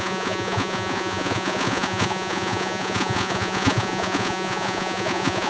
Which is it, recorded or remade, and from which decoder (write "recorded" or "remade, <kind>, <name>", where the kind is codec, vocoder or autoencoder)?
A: remade, vocoder, Vocos